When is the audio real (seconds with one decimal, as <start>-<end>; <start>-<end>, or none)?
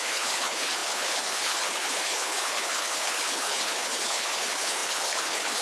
none